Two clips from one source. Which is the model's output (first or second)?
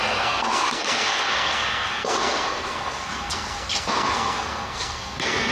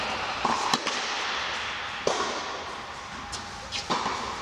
first